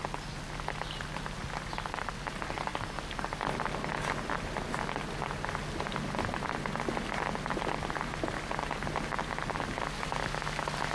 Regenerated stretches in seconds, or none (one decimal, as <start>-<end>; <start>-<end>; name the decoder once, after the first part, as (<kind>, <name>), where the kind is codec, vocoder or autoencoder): none